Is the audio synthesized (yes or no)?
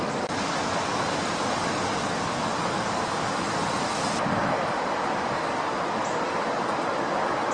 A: no